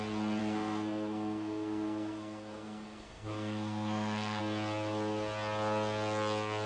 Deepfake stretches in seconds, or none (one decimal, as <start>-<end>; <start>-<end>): 0.4-4.4